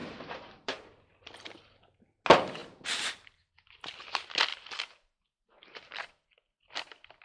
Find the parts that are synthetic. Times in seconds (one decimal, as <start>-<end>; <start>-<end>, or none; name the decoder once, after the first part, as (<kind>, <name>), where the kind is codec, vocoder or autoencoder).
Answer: 0.0-0.7 (vocoder, BigVGAN v2); 4.5-6.1